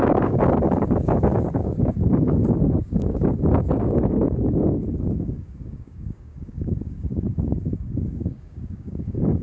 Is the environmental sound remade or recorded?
remade